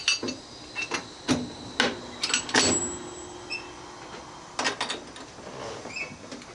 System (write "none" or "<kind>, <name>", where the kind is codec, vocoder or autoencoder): none